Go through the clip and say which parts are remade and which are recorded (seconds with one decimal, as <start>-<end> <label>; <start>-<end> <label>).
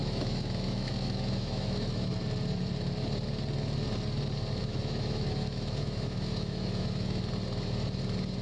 0.0-2.1 remade; 2.1-4.6 recorded; 4.6-7.2 remade; 7.2-8.4 recorded